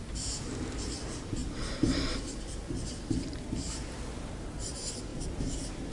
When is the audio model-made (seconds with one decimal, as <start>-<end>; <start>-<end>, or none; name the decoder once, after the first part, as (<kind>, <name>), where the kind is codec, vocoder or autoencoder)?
0.0-5.9 (vocoder, BigVGAN v2)